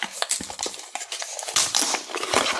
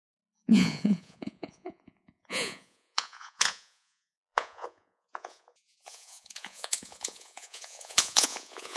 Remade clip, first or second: second